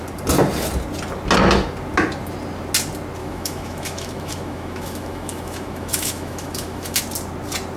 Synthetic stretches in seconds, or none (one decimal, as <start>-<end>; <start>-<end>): 3.2-7.0